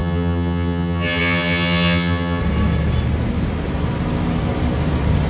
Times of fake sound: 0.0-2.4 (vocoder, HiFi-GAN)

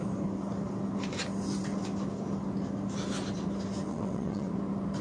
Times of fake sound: 3.9-4.5 (vocoder, WaveNeXt)

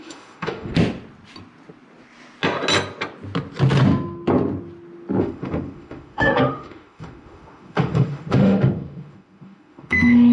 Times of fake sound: 0.0-0.7 (autoencoder, DAC-VAE); 5.2-10.3

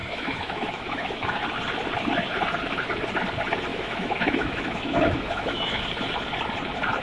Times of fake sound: 0.0-1.4 (autoencoder, DAC-VAE); 3.7-5.8

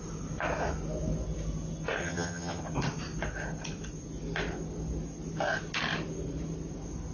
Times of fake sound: 2.0-2.6 (vocoder, HiFi-GAN)